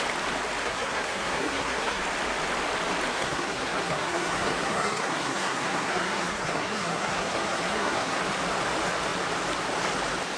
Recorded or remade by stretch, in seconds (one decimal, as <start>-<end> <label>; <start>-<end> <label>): 0.0-0.6 recorded; 0.6-2.0 remade; 2.0-3.1 recorded; 3.1-8.2 remade; 8.2-10.4 recorded